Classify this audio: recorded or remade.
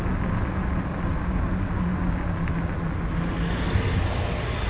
recorded